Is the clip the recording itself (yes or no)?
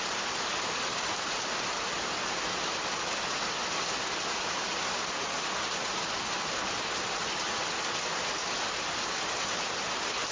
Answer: yes